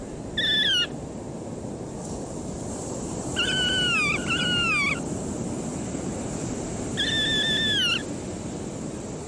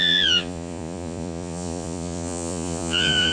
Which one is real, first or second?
first